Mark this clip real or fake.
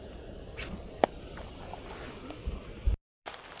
real